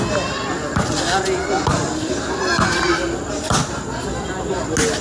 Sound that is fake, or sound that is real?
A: real